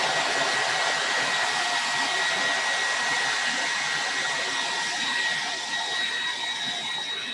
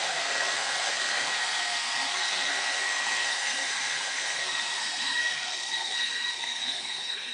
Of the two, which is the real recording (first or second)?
first